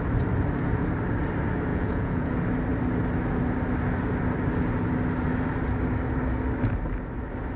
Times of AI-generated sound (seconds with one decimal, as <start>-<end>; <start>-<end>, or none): 1.7-2.3